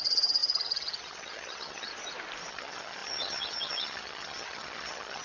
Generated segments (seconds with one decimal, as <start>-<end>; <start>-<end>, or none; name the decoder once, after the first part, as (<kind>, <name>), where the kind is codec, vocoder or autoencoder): 0.0-1.9 (vocoder, HiFi-GAN); 2.5-5.2

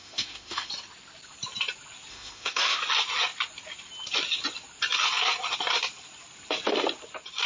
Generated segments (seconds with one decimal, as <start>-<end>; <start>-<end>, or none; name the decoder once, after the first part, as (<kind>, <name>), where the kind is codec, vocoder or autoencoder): 0.0-0.7 (autoencoder, DAC-VAE); 2.1-2.8